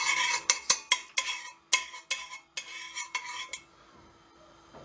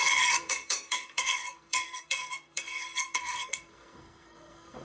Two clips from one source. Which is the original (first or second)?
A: first